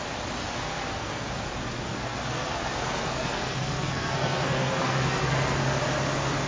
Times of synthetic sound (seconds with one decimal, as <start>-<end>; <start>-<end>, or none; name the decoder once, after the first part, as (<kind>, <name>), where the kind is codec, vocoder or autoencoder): 0.4-1.3 (codec, SNAC); 1.9-5.8